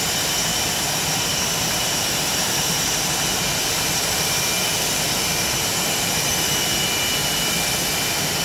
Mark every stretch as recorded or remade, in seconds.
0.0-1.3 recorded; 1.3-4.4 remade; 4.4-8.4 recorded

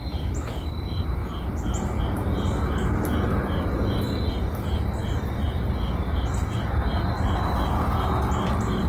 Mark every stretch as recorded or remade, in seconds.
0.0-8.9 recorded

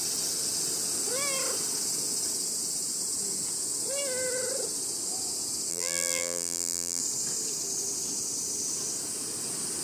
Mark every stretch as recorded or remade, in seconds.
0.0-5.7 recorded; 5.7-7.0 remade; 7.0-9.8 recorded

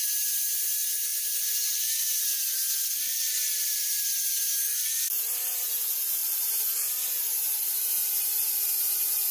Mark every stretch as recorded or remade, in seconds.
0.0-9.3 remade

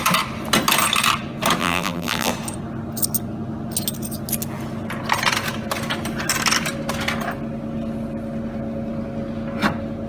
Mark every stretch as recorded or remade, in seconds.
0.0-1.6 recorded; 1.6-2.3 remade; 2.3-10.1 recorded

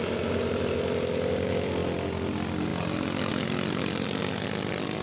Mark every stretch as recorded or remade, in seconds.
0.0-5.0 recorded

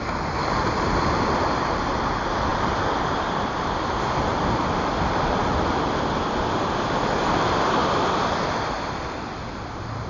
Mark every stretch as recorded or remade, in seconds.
0.0-2.5 recorded; 2.5-5.1 remade; 5.1-7.8 recorded; 7.8-10.1 remade

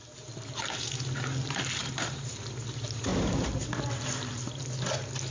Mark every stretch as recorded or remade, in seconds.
0.0-1.8 recorded; 1.8-2.4 remade; 2.4-5.3 recorded